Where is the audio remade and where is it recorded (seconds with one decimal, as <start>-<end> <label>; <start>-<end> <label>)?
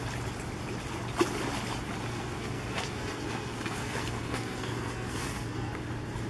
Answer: 0.0-2.1 recorded; 2.1-5.7 remade; 5.7-6.3 recorded